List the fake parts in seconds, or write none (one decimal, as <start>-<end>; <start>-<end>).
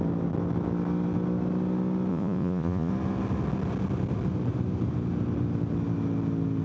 2.1-2.9